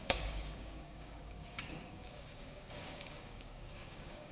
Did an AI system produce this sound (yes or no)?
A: yes